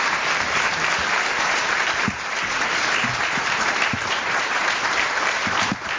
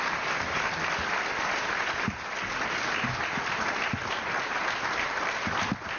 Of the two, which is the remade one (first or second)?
first